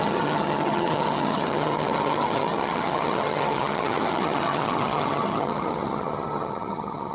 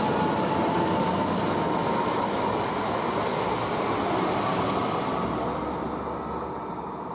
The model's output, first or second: first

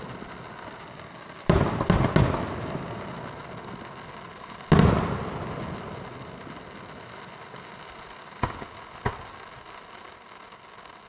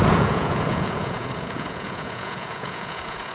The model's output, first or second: second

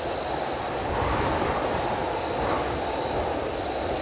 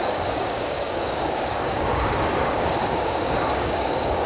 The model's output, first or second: second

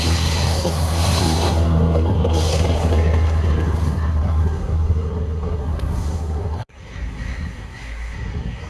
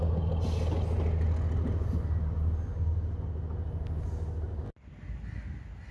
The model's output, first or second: first